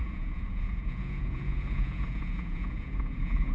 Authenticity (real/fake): fake